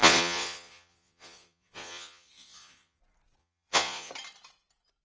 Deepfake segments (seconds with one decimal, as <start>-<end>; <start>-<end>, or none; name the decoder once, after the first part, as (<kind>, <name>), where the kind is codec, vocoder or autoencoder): 0.0-3.0 (vocoder, Vocos); 3.4-4.1